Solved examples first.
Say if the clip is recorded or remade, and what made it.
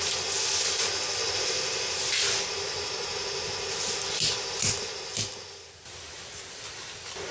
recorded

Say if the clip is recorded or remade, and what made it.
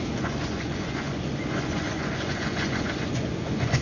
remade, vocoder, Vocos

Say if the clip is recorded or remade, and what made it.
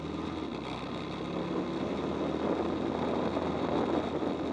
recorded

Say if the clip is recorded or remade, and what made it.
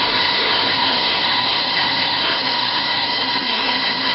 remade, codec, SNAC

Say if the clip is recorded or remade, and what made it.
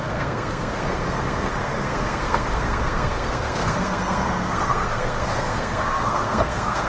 remade, codec, SNAC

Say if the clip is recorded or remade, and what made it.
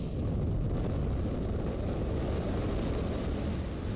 recorded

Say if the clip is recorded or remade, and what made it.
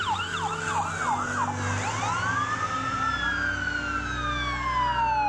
recorded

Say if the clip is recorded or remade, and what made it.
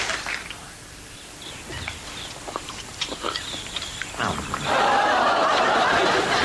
remade, vocoder, BigVGAN v2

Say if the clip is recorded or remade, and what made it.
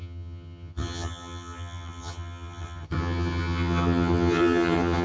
remade, vocoder, HiFi-GAN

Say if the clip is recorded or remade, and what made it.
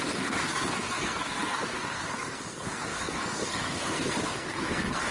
remade, codec, SNAC